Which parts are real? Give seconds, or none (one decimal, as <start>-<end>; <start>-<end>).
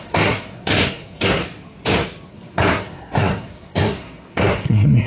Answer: 1.4-2.3